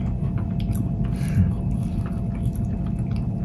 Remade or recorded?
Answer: recorded